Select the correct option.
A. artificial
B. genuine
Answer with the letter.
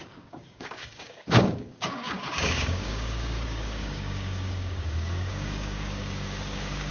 A